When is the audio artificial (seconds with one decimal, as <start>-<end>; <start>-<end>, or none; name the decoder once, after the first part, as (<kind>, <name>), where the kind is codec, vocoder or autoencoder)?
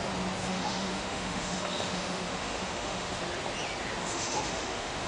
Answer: 0.4-3.2 (autoencoder, DAC-VAE); 4.0-5.1